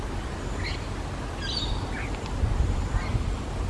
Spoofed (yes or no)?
no